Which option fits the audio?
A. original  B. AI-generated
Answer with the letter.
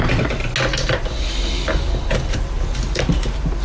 A